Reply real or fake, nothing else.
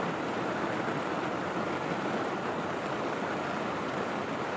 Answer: fake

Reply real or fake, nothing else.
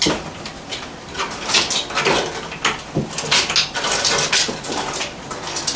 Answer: real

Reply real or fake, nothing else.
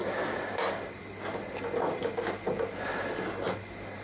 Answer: real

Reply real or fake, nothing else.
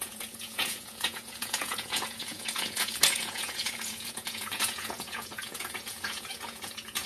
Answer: fake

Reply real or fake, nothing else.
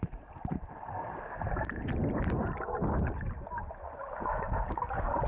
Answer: real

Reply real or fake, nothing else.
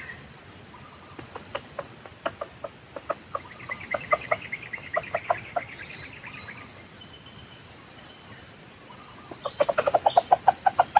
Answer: real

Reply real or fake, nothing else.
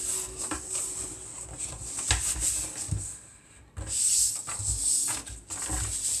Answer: real